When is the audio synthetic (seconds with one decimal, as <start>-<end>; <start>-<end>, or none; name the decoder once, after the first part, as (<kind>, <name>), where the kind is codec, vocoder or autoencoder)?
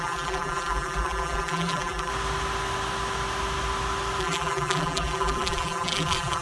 0.0-2.1 (vocoder, BigVGAN v2); 4.2-6.4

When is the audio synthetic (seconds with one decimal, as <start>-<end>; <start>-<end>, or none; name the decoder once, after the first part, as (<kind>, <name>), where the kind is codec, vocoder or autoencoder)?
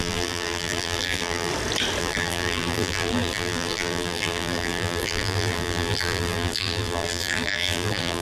0.0-1.5 (vocoder, BigVGAN v2); 2.0-8.2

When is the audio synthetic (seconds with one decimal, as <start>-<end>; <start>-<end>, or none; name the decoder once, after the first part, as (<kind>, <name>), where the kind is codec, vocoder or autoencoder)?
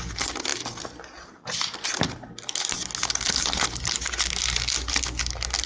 none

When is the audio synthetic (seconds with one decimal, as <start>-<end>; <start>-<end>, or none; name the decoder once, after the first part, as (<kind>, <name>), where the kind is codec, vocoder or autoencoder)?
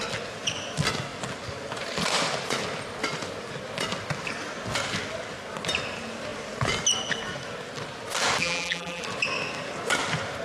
8.4-9.0 (vocoder, BigVGAN v2)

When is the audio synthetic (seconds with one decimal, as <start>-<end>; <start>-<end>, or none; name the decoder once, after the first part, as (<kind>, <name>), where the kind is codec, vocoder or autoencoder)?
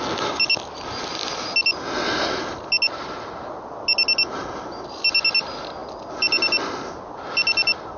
none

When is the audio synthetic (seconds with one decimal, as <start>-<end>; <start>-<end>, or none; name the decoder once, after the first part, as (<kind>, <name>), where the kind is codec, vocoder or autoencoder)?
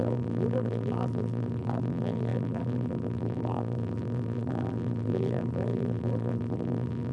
0.0-7.1 (vocoder, BigVGAN v2)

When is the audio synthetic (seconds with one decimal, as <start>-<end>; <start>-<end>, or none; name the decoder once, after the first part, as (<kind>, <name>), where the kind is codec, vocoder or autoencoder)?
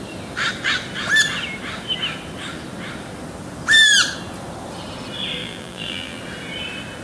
5.4-6.2 (vocoder, BigVGAN v2)